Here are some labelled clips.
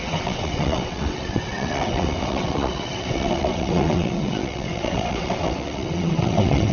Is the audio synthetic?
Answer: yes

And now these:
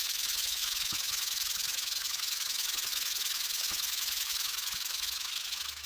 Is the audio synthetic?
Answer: yes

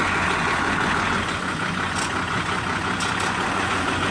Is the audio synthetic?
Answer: yes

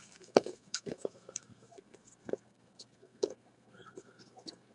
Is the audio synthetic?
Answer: yes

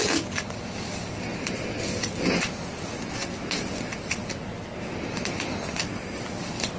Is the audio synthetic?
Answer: no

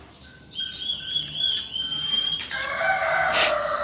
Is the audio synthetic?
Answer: no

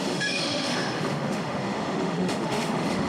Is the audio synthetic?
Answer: yes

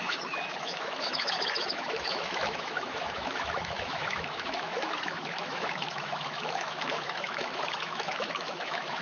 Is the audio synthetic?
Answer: yes